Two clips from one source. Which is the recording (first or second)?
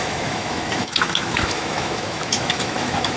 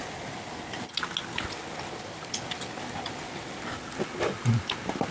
second